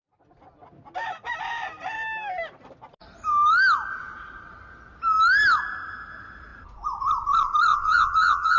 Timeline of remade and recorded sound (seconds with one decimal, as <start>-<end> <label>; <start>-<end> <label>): 0.0-7.7 recorded; 7.7-8.6 remade